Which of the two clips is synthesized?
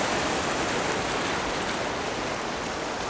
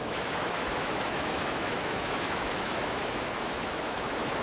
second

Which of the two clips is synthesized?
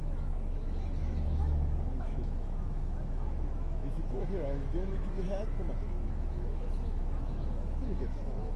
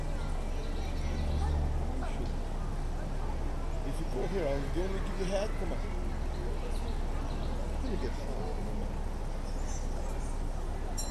first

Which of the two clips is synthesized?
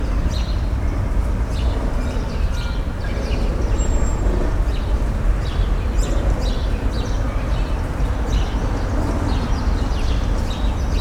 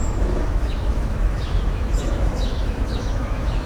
second